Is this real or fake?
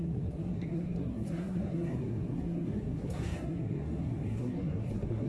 fake